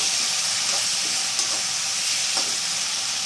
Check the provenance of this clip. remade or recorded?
recorded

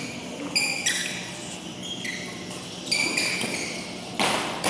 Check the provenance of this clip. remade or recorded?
recorded